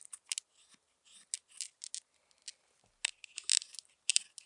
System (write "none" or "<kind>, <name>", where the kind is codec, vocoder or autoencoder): none